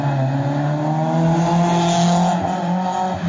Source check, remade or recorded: recorded